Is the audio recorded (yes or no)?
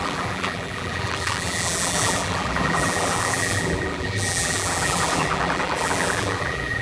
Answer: no